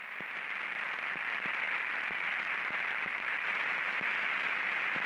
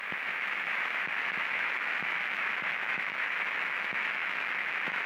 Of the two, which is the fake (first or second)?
second